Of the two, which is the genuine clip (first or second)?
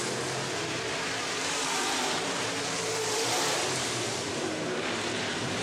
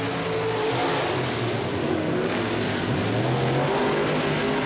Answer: second